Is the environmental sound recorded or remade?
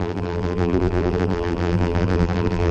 remade